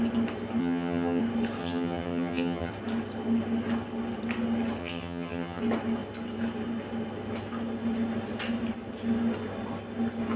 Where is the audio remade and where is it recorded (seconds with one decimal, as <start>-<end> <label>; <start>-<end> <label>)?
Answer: 0.0-0.6 recorded; 0.6-1.2 remade; 1.2-1.6 recorded; 1.6-2.7 remade; 2.7-4.8 recorded; 4.8-5.6 remade; 5.6-10.4 recorded